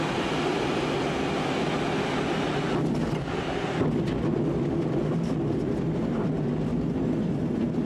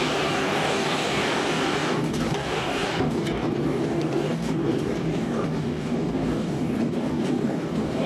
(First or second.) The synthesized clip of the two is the second